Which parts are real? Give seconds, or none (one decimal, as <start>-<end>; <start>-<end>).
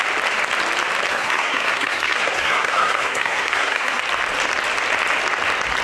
0.0-1.1; 4.0-5.8